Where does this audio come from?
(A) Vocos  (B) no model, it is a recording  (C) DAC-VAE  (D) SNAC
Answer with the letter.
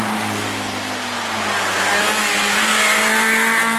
B